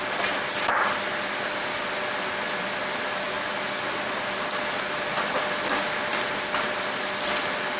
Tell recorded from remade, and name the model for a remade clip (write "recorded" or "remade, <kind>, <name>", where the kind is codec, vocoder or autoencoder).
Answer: recorded